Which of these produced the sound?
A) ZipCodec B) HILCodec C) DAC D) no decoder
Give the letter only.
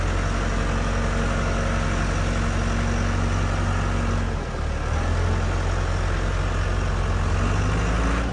D